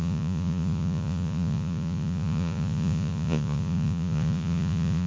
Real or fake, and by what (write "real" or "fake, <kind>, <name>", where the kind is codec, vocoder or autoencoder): fake, vocoder, Vocos